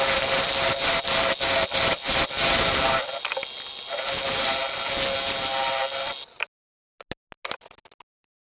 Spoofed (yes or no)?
no